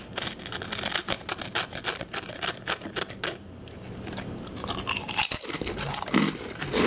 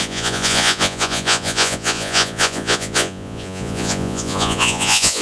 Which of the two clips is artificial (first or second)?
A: second